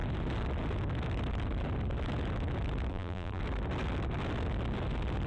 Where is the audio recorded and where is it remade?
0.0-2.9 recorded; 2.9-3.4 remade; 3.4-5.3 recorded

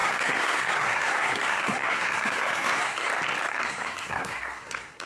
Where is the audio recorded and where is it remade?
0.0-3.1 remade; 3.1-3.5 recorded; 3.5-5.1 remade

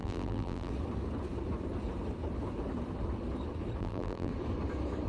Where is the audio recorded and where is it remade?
0.0-0.7 remade; 0.7-3.8 recorded; 3.8-4.3 remade; 4.3-5.1 recorded

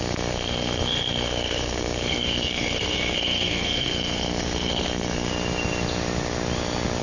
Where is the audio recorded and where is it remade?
0.0-5.3 remade; 5.3-7.0 recorded

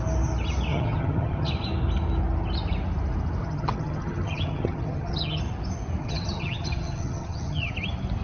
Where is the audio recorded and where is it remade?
0.0-0.7 recorded; 0.7-1.5 remade; 1.5-3.4 recorded; 3.4-5.4 remade; 5.4-6.0 recorded; 6.0-7.7 remade; 7.7-8.2 recorded

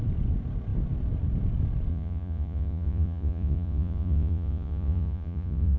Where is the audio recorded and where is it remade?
0.0-1.9 recorded; 1.9-5.8 remade

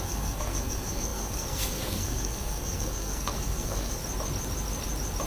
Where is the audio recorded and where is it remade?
0.0-4.0 remade; 4.0-5.3 recorded